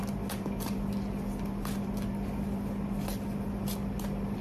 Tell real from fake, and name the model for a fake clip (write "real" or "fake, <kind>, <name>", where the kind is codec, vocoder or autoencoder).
real